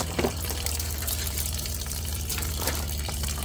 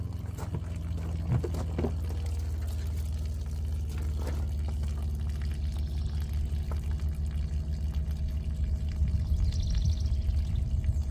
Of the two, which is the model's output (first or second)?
first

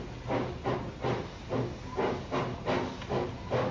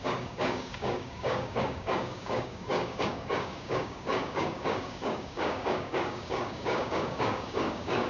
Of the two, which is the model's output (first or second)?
second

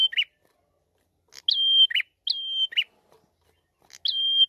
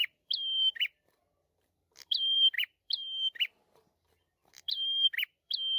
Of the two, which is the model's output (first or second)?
second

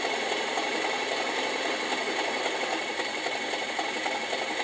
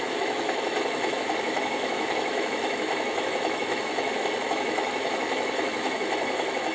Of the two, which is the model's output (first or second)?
second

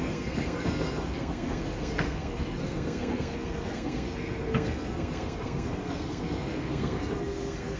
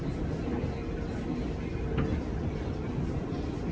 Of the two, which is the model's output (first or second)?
first